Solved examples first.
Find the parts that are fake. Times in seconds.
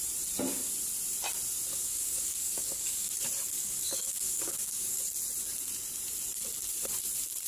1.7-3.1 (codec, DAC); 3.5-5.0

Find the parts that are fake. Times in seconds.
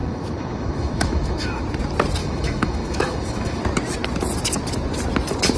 0.0-1.6 (autoencoder, DAC-VAE); 2.2-3.6